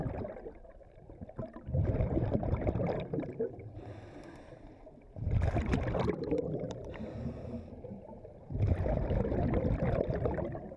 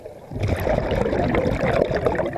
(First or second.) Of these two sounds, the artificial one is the first